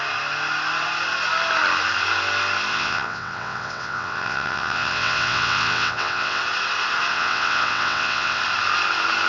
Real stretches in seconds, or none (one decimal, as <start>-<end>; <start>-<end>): 0.0-2.7; 6.4-7.1; 8.4-9.3